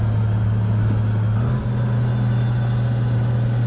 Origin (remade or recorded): recorded